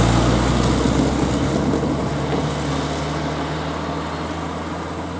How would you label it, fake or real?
real